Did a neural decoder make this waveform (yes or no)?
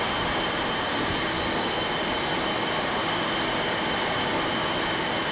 no